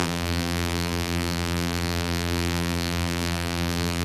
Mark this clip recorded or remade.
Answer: remade